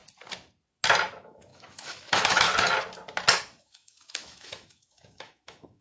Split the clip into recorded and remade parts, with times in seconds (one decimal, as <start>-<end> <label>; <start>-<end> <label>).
0.0-1.1 recorded; 1.1-2.5 remade; 2.5-3.6 recorded; 3.6-5.8 remade